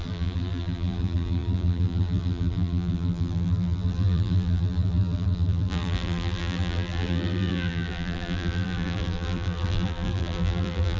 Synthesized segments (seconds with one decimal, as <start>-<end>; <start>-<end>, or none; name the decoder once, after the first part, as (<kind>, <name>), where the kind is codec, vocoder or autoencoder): 0.0-11.0 (vocoder, BigVGAN v2)